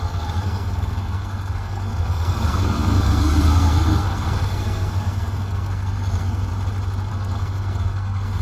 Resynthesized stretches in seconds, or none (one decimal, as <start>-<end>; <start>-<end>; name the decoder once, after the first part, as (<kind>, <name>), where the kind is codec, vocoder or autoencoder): 0.0-6.5 (codec, SNAC); 7.1-8.4